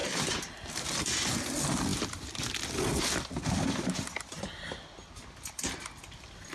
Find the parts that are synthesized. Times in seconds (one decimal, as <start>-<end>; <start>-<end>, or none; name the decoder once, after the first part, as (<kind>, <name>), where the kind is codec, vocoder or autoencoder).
none